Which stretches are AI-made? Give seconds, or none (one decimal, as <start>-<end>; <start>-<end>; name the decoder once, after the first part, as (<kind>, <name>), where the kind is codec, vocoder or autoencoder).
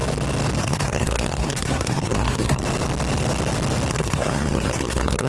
0.6-2.6 (codec, SNAC); 3.9-5.3